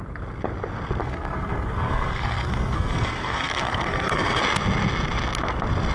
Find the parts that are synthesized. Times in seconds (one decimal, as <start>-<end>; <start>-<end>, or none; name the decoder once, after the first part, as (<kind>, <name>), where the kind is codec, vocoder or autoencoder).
1.0-4.4 (codec, SNAC)